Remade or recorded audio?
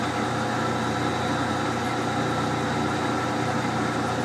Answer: recorded